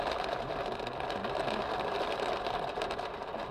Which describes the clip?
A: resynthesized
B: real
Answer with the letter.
B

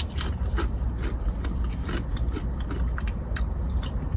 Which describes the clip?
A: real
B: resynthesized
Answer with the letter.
B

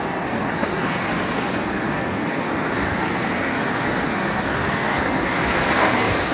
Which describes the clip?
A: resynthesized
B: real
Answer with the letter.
A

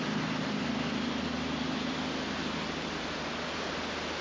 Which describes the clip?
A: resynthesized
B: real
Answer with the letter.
B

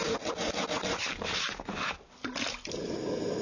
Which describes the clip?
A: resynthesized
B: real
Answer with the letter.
B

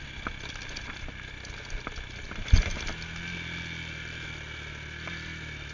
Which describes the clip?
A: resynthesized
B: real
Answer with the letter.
B